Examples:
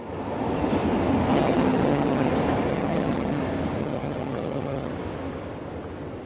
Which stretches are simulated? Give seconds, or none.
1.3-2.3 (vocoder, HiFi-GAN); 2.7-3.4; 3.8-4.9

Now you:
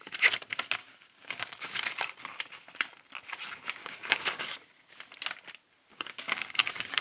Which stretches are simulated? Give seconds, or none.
0.8-2.2 (codec, DAC); 3.8-4.6; 5.9-7.0